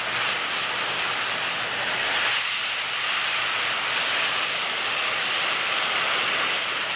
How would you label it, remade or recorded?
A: recorded